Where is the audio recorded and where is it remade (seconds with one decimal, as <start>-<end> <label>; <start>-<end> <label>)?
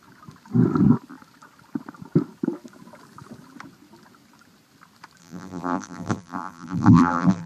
0.0-5.2 recorded; 5.2-7.5 remade